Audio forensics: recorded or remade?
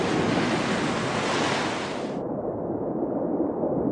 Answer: recorded